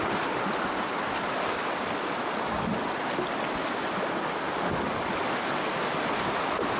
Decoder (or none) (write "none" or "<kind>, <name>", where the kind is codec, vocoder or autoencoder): none